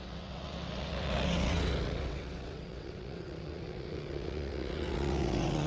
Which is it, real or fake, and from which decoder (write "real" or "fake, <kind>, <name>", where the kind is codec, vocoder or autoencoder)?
fake, vocoder, WaveNeXt